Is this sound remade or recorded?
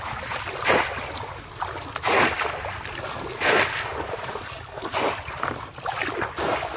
recorded